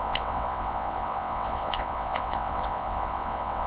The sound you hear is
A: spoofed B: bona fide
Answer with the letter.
A